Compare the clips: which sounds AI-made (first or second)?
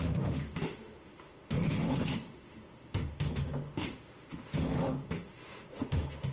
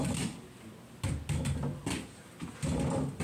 first